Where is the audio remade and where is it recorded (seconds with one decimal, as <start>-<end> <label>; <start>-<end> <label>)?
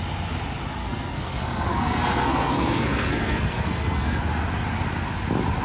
0.0-0.8 recorded; 0.8-4.2 remade; 4.2-5.6 recorded